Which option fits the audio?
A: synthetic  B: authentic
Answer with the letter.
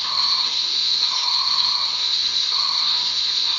A